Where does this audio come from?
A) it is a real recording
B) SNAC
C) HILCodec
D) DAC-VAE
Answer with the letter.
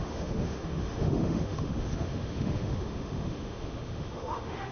D